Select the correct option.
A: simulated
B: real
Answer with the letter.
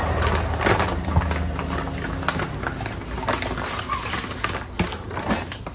B